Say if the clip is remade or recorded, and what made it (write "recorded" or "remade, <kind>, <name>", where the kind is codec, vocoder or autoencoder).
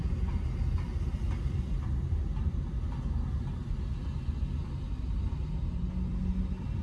recorded